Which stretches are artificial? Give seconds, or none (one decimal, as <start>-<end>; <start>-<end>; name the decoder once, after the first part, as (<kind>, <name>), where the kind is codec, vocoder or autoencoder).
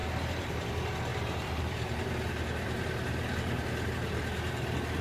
0.0-0.7 (vocoder, BigVGAN v2); 1.1-3.7